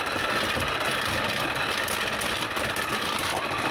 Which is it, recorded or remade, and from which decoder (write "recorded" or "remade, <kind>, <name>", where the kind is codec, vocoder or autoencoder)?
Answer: recorded